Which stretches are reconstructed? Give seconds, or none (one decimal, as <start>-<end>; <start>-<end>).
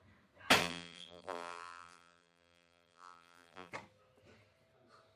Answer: 0.6-3.7